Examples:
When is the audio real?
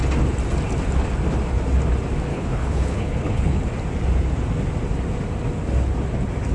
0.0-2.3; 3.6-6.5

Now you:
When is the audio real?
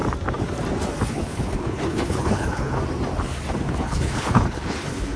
0.0-1.1; 2.8-3.6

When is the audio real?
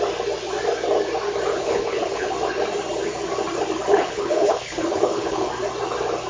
0.0-1.5; 2.3-3.9; 5.5-6.3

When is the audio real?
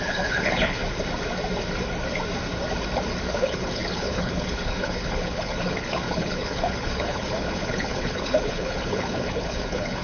0.8-3.3